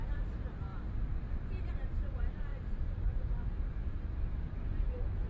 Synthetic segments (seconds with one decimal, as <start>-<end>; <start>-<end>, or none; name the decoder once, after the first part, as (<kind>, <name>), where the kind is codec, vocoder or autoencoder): 0.0-0.7 (vocoder, BigVGAN v2); 1.7-5.3